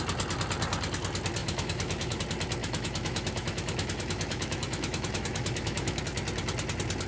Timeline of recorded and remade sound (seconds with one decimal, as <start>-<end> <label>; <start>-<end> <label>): 0.0-1.4 recorded; 1.4-2.2 remade; 2.2-2.6 recorded; 2.6-6.0 remade; 6.0-7.1 recorded